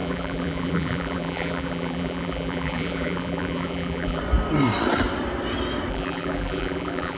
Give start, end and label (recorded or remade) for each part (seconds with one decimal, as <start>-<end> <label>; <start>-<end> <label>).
0.0-4.2 remade; 4.2-5.9 recorded; 5.9-7.2 remade